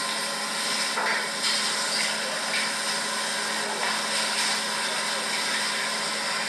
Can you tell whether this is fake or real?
real